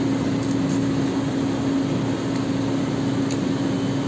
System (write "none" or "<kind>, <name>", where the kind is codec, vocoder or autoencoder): none